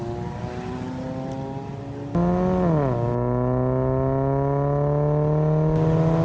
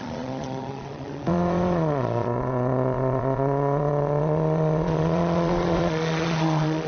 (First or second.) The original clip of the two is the first